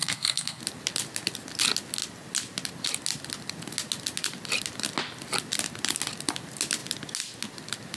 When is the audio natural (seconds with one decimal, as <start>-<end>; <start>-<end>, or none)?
0.6-8.0

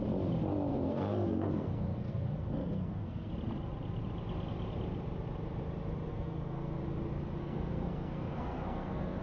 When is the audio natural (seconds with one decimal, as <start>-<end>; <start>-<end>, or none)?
0.0-0.7; 3.3-6.1; 6.8-7.4